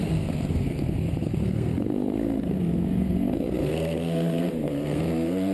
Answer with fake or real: fake